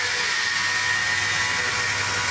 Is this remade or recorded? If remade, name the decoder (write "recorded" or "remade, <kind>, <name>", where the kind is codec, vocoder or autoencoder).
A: recorded